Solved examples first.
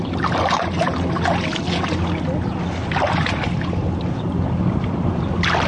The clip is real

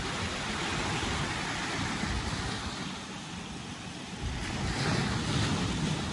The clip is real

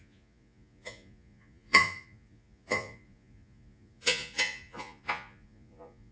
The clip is fake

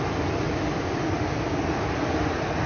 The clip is real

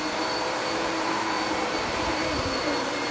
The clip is fake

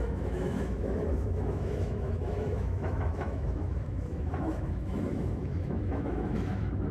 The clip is fake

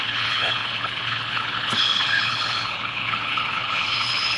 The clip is fake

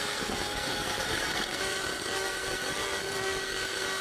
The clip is fake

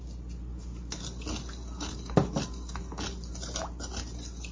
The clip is real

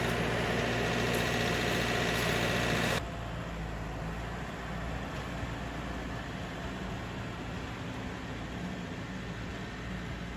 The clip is real